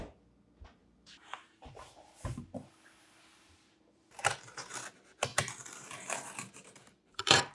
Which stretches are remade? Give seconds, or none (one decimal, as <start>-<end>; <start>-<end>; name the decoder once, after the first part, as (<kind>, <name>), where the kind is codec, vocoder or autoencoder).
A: 0.8-2.4 (vocoder, BigVGAN v2); 3.3-4.8; 5.3-7.5